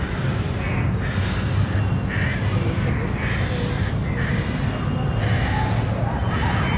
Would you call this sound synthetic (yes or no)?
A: no